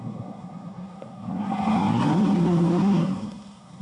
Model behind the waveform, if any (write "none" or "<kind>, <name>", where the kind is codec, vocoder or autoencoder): codec, SNAC